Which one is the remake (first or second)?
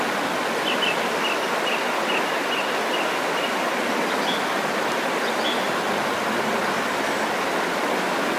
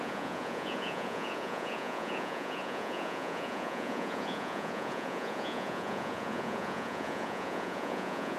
second